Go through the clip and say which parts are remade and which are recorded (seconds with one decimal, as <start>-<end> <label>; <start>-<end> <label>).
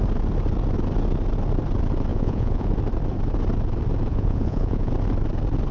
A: 0.0-2.1 recorded; 2.1-2.7 remade; 2.7-4.1 recorded; 4.1-4.9 remade; 4.9-5.7 recorded